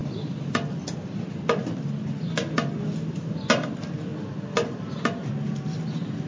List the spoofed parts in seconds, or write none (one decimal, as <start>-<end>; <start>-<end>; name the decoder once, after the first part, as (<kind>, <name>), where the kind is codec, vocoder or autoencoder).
none